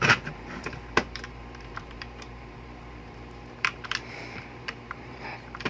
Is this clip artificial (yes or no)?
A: yes